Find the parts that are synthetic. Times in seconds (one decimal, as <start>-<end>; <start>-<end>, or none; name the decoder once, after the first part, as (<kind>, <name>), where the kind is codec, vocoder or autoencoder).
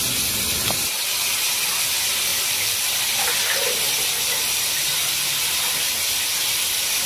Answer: 2.3-3.3 (vocoder, BigVGAN v2)